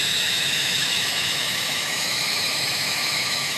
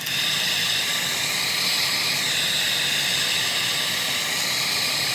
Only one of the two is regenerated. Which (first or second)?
first